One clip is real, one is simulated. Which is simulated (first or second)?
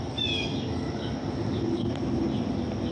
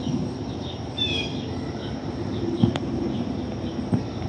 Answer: second